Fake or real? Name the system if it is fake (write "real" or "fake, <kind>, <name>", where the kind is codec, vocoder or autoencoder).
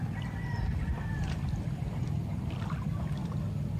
real